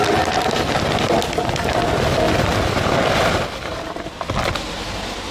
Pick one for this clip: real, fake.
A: real